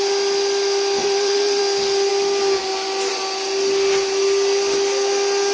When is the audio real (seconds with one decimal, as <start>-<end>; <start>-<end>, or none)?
0.0-1.0; 1.6-5.5

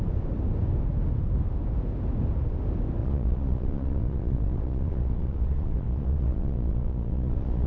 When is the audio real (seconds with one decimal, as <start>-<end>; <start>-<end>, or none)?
0.0-3.0

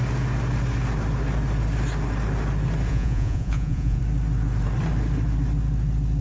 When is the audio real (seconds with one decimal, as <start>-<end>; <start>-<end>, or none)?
0.0-2.9; 4.0-6.2

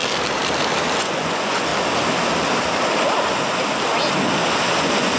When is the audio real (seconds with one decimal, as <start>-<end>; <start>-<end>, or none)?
0.0-1.0; 1.7-4.8

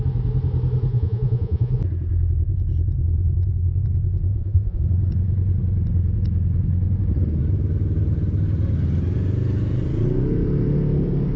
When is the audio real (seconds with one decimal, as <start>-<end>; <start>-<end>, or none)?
0.0-0.9; 1.8-4.3; 4.8-11.4